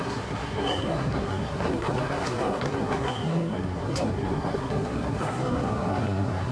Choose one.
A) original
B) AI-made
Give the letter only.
B